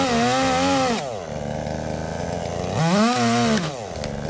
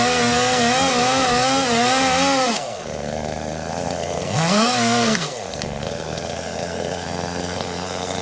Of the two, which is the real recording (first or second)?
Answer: first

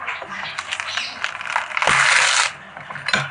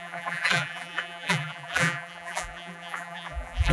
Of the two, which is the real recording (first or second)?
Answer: first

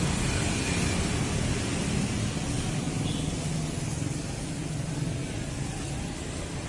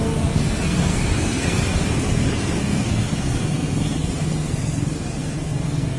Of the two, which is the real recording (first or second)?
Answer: first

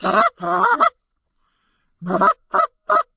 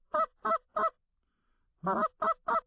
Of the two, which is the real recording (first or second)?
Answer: second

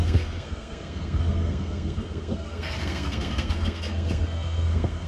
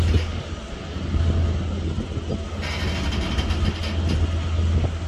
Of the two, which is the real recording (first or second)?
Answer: second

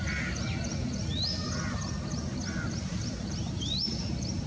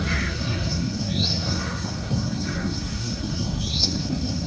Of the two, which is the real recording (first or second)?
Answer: first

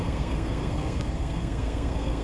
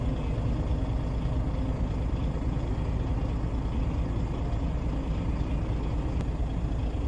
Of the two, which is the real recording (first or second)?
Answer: second